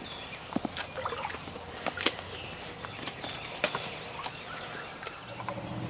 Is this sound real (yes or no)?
yes